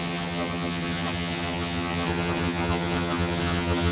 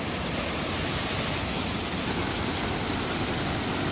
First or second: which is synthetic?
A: first